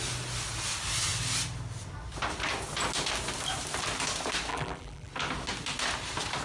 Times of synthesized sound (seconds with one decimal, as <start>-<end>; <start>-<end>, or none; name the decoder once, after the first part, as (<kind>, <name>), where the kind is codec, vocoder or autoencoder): 4.5-5.1 (vocoder, BigVGAN v2)